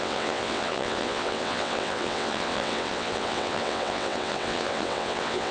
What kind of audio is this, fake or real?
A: fake